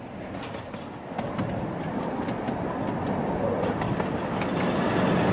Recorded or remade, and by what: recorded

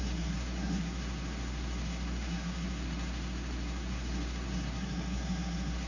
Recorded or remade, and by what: remade, codec, SNAC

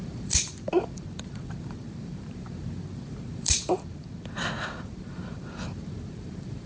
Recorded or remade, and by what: remade, vocoder, BigVGAN v2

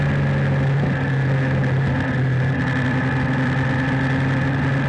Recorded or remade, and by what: recorded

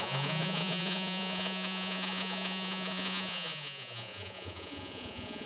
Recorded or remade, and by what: remade, vocoder, Vocos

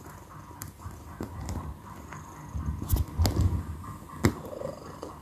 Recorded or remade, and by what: recorded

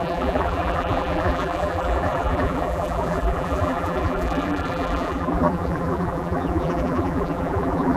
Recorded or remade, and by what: remade, vocoder, BigVGAN v2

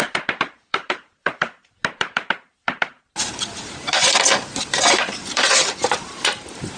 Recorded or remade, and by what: remade, vocoder, BigVGAN v2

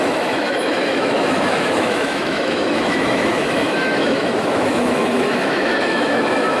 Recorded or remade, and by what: remade, autoencoder, DAC-VAE